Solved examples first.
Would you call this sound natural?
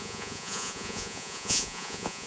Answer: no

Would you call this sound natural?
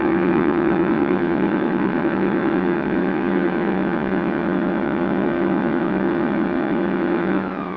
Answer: no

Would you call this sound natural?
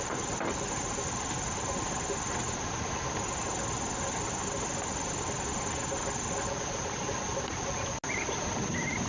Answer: yes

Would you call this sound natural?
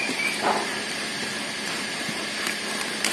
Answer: yes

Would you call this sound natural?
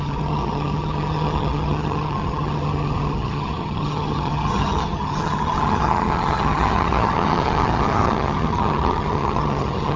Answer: no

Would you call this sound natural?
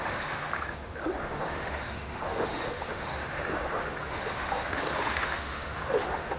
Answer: no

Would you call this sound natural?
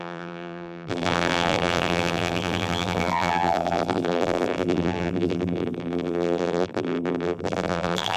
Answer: no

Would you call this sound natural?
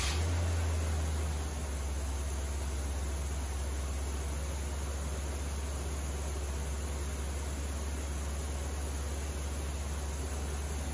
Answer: yes